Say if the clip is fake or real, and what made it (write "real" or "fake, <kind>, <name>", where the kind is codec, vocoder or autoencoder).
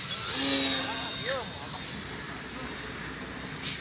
real